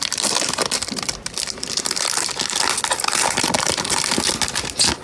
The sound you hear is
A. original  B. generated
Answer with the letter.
A